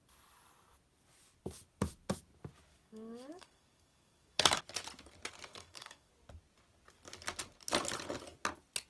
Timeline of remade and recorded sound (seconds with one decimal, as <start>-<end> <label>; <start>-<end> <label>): 0.0-2.7 recorded; 2.7-4.6 remade; 4.6-5.5 recorded; 5.5-6.1 remade; 6.1-8.9 recorded